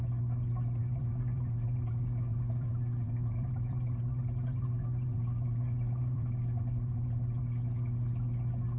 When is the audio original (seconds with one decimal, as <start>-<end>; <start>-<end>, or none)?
0.0-0.8; 1.9-2.3; 7.4-8.8